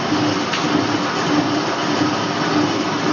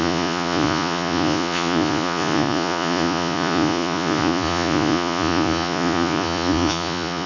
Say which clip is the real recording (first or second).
first